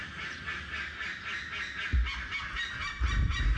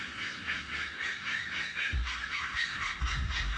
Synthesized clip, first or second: second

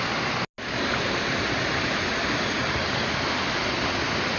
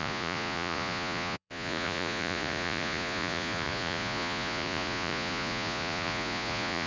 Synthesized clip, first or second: second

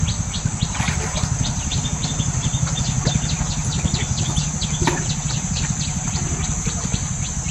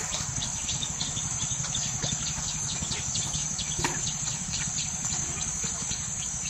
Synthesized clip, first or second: second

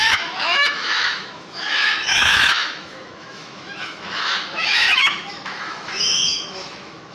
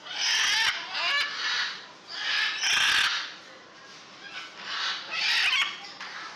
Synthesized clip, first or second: first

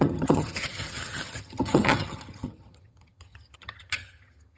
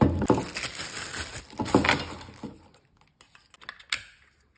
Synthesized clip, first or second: first